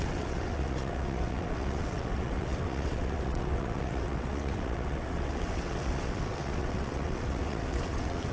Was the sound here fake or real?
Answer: fake